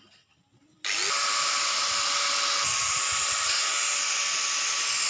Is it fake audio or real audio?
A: real